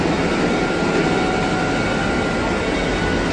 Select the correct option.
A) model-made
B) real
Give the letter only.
B